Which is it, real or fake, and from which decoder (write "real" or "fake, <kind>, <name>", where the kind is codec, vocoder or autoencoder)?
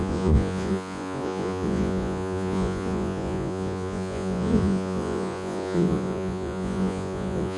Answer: fake, vocoder, Vocos